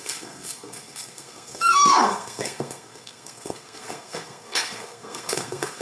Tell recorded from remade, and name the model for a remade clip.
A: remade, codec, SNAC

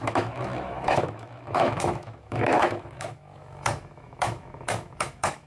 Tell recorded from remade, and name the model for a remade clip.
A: remade, autoencoder, DAC-VAE